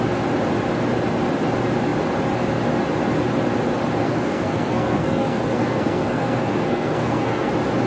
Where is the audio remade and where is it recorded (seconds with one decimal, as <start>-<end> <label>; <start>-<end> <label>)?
0.0-4.0 recorded; 4.0-7.5 remade; 7.5-7.9 recorded